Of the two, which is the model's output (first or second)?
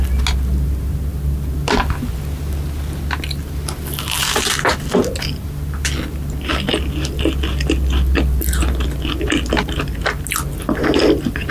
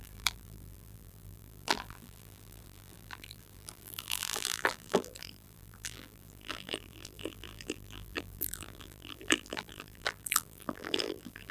second